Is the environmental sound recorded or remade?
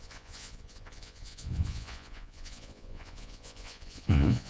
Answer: remade